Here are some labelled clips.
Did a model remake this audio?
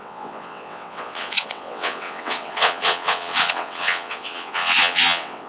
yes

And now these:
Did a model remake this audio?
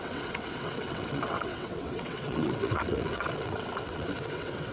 yes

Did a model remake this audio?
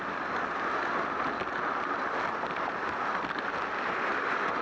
no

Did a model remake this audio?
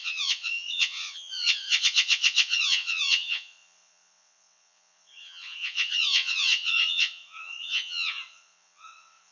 yes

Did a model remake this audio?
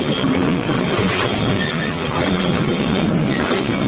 yes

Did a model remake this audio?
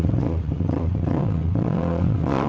yes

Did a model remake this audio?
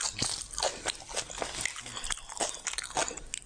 no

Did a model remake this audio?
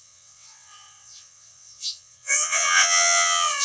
yes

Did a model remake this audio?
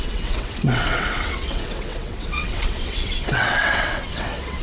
yes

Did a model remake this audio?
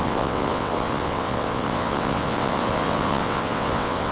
yes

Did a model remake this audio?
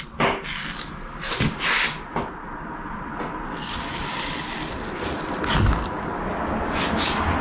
no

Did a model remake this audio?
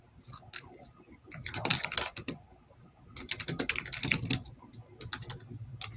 no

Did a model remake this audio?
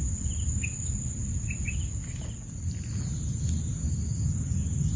no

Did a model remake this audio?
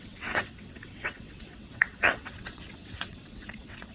yes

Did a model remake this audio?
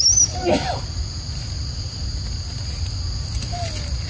no